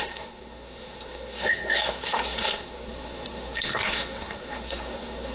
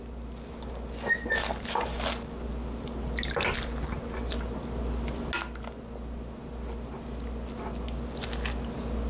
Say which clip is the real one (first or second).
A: second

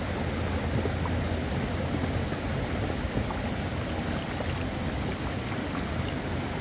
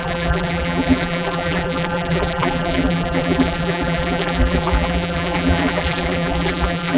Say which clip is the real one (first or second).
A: first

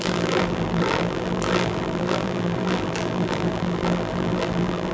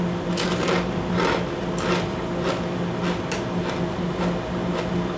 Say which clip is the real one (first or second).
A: second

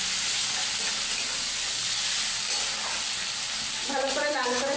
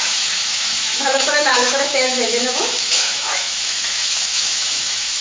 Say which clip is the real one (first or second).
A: first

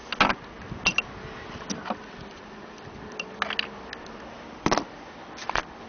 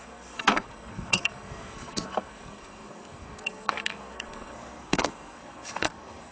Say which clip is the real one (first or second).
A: first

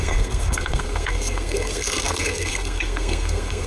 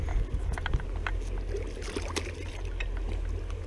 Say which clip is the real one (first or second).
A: second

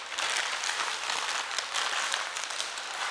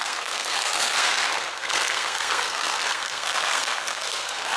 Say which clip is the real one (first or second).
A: first